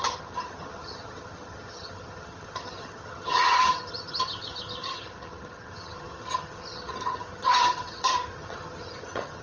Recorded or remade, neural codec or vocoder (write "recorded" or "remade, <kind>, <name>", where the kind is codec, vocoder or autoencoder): remade, vocoder, HiFi-GAN